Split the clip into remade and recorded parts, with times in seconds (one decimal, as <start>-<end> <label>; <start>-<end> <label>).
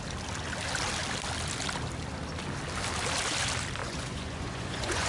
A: 0.0-3.8 recorded; 3.8-5.1 remade